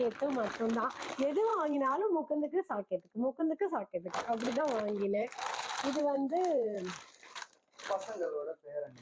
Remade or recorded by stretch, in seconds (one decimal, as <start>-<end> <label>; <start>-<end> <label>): 0.0-1.5 recorded; 1.5-4.6 remade; 4.6-5.0 recorded; 5.0-8.6 remade; 8.6-9.0 recorded